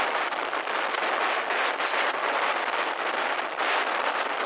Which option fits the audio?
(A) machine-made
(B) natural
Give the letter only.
B